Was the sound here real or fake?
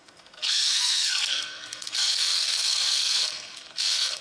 fake